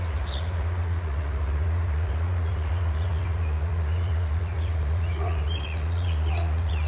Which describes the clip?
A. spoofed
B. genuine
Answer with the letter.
A